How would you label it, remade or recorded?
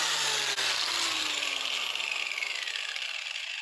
recorded